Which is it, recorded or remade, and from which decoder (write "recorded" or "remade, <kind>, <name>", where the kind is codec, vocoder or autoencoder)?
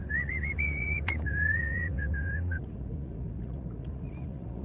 remade, vocoder, Vocos